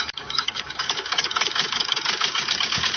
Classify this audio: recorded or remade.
remade